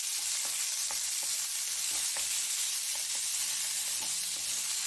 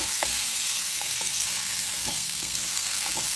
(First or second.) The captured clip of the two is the first